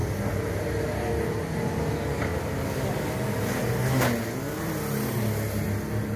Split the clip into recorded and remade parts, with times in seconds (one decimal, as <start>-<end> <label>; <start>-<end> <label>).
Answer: 0.0-6.2 recorded